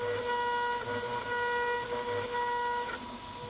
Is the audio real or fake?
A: real